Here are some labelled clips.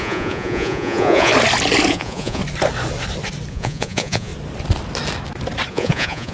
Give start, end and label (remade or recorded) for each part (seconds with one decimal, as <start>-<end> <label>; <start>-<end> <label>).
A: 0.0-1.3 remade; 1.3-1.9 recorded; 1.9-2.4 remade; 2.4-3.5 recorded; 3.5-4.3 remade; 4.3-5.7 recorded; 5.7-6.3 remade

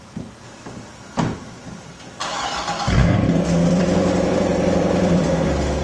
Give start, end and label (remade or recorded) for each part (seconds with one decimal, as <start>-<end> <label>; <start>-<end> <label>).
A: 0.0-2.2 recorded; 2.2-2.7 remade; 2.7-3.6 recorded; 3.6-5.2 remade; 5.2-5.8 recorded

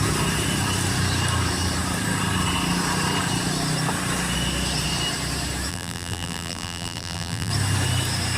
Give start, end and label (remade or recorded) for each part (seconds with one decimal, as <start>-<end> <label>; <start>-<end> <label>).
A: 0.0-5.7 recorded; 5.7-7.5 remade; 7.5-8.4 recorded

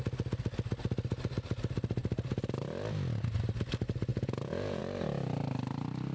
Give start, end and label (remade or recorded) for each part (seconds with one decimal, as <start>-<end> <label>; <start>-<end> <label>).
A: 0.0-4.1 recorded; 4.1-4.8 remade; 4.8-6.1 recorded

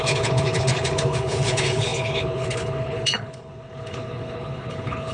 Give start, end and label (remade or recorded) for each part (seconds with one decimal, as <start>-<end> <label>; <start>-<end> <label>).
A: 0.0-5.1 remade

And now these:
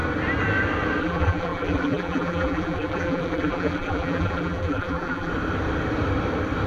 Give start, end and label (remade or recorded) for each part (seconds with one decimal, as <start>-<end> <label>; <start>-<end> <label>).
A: 0.0-1.0 recorded; 1.0-5.3 remade; 5.3-6.7 recorded